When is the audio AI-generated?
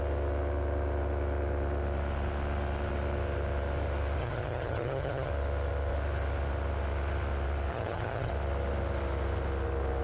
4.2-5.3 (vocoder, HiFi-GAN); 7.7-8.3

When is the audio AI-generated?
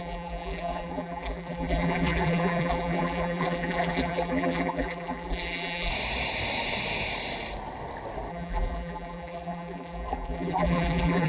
0.0-5.9 (vocoder, BigVGAN v2); 8.3-11.3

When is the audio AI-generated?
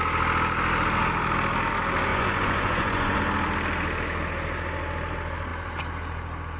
2.1-3.2 (vocoder, Vocos)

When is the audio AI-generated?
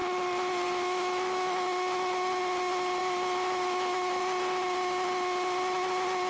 0.0-2.4 (autoencoder, DAC-VAE); 3.0-4.2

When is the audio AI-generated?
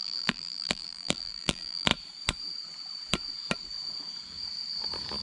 0.0-1.9 (vocoder, BigVGAN v2)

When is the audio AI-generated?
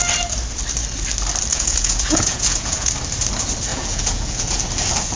1.5-2.9 (vocoder, Vocos); 3.7-4.6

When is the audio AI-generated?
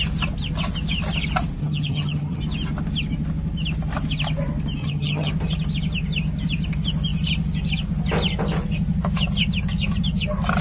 1.6-2.4 (vocoder, HiFi-GAN); 4.8-5.3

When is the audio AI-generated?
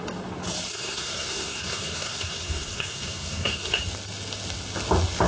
0.7-3.8 (codec, SNAC)